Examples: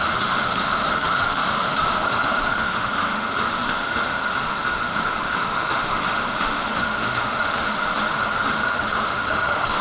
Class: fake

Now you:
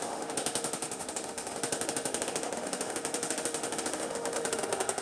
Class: fake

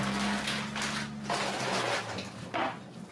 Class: real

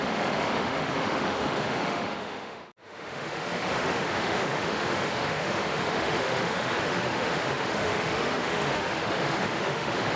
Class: fake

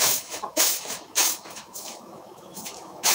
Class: fake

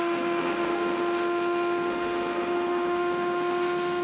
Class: fake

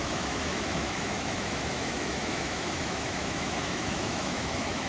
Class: fake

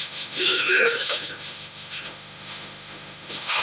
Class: fake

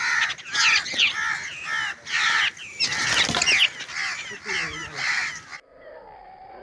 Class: real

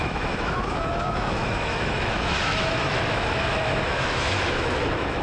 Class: fake